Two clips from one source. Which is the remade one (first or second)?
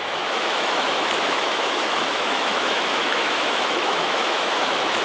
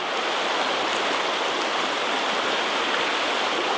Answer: first